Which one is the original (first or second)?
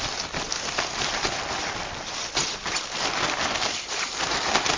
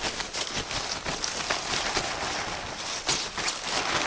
second